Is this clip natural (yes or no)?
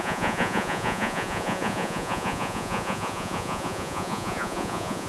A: no